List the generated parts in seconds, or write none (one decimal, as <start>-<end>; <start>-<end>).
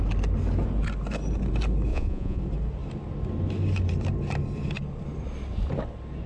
1.9-2.4